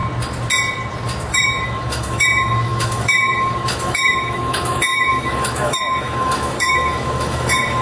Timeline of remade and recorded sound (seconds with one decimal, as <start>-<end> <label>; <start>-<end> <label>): 0.0-1.3 recorded; 1.3-7.8 remade